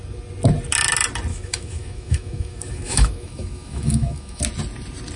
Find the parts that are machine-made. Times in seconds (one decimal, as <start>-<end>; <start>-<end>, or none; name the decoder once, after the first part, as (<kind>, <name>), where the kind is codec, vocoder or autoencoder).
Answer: 1.3-4.4 (autoencoder, DAC-VAE)